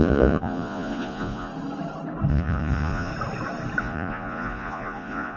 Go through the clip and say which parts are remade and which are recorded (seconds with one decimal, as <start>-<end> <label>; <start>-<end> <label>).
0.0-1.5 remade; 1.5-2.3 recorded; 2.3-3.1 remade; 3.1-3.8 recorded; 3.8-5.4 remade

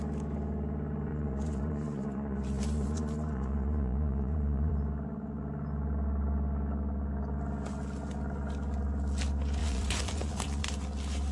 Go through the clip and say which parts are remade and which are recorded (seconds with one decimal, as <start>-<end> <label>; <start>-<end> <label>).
0.0-1.1 recorded; 1.1-4.7 remade; 4.7-9.6 recorded; 9.6-10.6 remade; 10.6-11.3 recorded

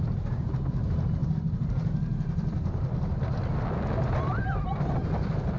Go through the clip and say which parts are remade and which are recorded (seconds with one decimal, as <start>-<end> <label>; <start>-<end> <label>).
0.0-5.6 recorded

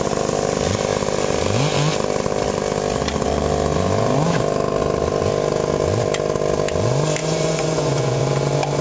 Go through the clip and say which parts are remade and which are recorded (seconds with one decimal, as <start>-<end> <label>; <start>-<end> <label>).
0.0-7.2 recorded; 7.2-8.2 remade; 8.2-8.8 recorded

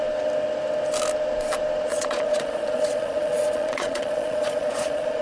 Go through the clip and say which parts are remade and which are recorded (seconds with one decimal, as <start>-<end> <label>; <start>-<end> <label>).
0.0-1.9 recorded; 1.9-5.2 remade

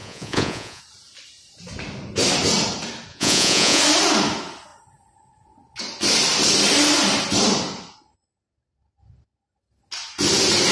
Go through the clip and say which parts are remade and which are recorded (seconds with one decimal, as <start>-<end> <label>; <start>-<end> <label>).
0.0-0.8 remade; 0.8-3.1 recorded; 3.1-3.8 remade; 3.8-10.7 recorded